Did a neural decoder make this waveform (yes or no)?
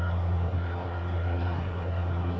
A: yes